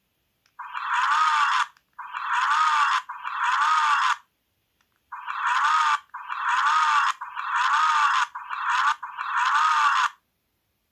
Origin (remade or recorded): recorded